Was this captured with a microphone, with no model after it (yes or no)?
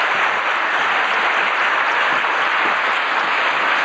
yes